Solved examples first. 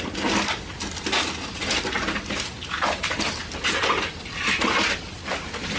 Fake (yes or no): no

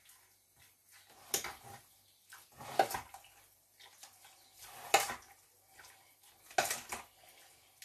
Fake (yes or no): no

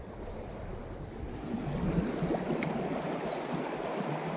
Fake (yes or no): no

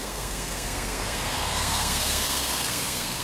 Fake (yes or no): yes